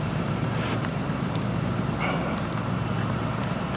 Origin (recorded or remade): remade